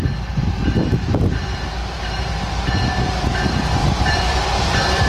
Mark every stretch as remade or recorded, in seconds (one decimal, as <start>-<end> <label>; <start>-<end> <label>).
0.0-1.8 recorded; 1.8-2.3 remade; 2.3-3.8 recorded; 3.8-5.1 remade